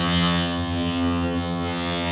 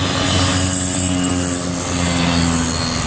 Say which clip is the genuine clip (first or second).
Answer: second